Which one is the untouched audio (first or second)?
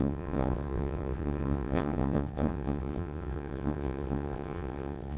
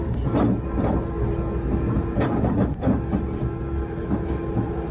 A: second